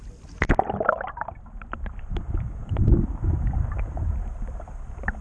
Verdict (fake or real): fake